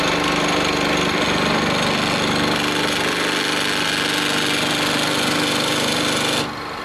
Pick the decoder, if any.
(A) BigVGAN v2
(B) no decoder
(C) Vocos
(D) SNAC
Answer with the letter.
B